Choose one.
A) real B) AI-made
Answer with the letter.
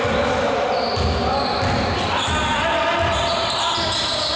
A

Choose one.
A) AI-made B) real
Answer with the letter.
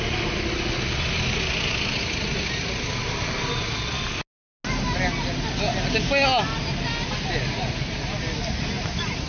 B